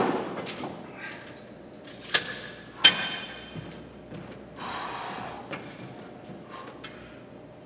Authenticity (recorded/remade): recorded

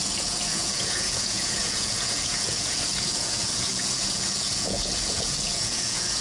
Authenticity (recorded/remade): remade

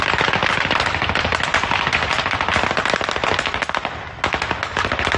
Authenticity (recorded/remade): recorded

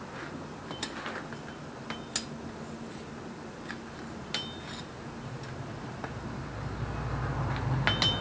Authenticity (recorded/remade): recorded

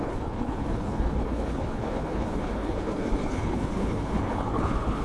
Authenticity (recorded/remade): remade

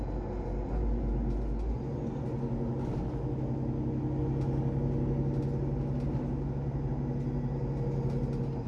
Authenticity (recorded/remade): recorded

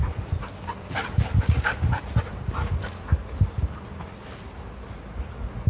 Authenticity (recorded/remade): recorded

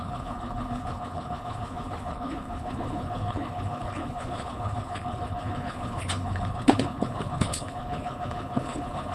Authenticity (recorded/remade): remade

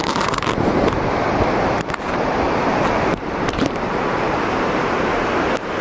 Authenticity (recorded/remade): remade